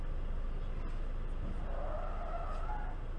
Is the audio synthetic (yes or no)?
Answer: no